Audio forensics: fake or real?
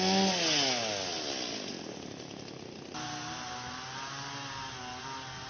real